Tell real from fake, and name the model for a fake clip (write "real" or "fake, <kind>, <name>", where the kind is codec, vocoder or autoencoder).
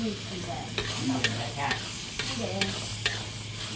real